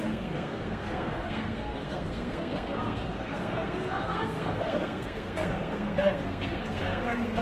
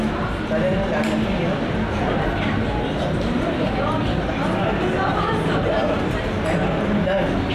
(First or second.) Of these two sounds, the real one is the second